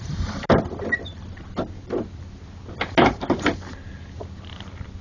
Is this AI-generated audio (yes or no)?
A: no